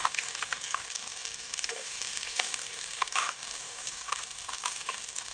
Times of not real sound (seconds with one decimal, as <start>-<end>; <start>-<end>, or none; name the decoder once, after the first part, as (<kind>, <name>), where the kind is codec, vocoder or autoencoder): 0.0-5.3 (codec, DAC)